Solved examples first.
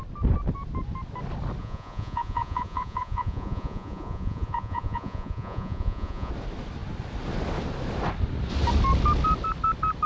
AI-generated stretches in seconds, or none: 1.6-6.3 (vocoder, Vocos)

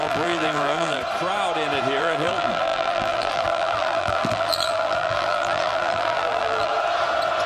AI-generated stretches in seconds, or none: 0.0-1.0 (vocoder, BigVGAN v2); 2.0-6.7